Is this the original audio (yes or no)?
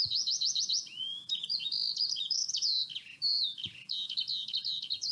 no